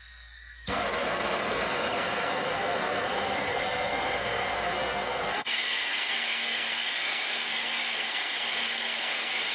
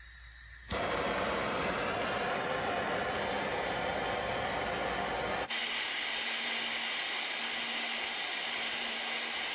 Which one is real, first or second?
second